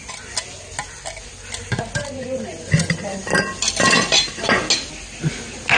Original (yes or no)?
yes